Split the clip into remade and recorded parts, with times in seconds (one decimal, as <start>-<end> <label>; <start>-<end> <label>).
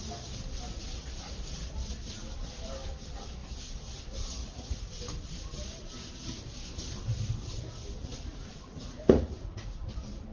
0.0-4.4 recorded; 4.4-5.0 remade; 5.0-8.0 recorded; 8.0-9.8 remade; 9.8-10.3 recorded